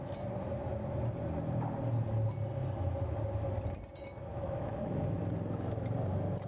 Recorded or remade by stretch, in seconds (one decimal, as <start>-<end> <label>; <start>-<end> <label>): 0.0-4.3 recorded; 4.3-5.2 remade; 5.2-6.5 recorded